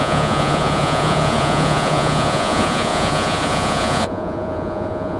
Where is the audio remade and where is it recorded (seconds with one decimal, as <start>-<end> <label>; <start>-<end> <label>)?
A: 0.0-5.2 remade